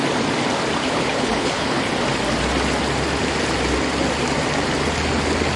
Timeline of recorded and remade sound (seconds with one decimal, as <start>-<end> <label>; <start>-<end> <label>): 0.0-0.8 recorded; 0.8-1.8 remade; 1.8-5.6 recorded